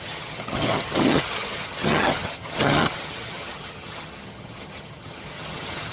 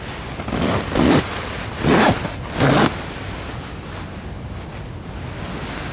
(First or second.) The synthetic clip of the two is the first